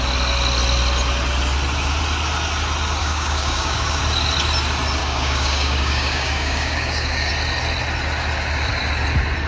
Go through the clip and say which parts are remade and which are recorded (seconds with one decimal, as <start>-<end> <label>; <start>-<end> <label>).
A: 0.0-3.0 recorded; 3.0-4.0 remade; 4.0-5.0 recorded; 5.0-7.3 remade; 7.3-9.5 recorded